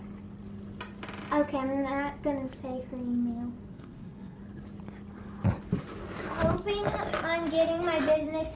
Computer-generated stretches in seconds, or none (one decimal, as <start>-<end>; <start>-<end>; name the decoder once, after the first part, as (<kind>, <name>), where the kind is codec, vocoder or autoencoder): 3.7-4.4 (codec, SNAC)